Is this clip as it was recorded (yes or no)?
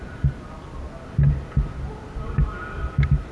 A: yes